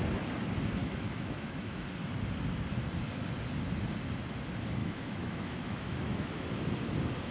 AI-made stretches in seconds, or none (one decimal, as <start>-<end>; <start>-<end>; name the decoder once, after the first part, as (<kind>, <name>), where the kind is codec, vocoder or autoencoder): 0.8-1.8 (autoencoder, DAC-VAE); 4.8-6.6